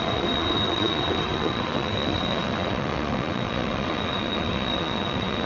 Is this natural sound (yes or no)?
no